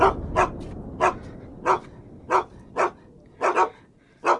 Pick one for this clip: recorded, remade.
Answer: recorded